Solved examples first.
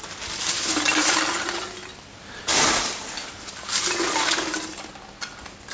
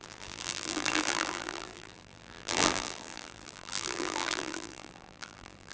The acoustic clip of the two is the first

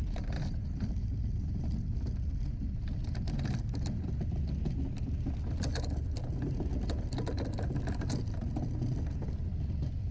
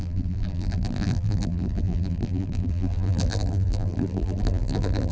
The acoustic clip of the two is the first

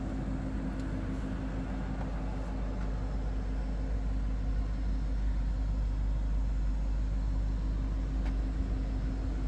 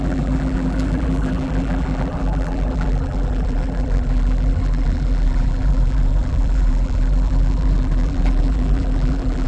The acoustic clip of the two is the first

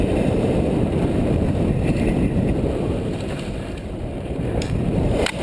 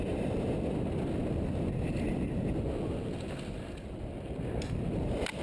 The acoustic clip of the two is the second